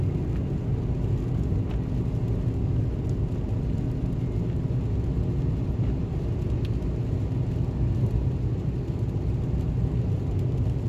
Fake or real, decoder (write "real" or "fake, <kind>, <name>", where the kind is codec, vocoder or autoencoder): real